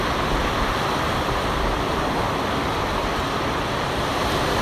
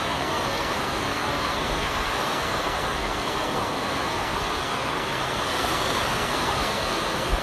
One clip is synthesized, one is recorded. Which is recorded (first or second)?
first